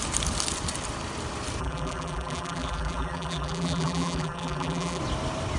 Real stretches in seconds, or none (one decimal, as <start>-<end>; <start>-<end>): 0.0-1.6; 5.0-5.6